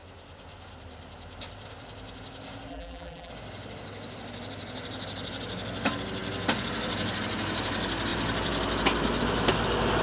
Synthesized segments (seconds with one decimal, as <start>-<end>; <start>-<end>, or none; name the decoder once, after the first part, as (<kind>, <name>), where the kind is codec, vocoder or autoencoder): 2.7-3.3 (vocoder, BigVGAN v2)